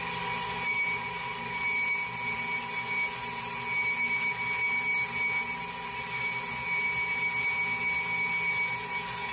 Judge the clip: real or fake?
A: real